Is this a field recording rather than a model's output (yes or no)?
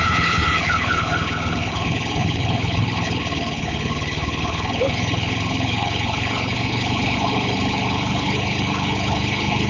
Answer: no